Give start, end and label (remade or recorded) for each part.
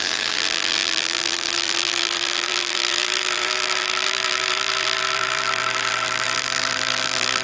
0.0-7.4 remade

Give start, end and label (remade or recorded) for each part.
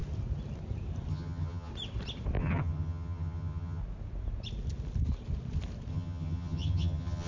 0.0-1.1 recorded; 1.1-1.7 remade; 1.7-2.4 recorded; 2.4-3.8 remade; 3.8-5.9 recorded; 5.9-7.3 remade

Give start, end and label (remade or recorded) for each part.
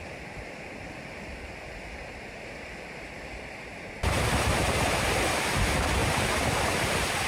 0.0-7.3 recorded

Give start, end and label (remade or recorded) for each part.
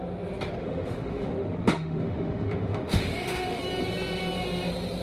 0.0-0.6 recorded; 0.6-3.6 remade; 3.6-5.0 recorded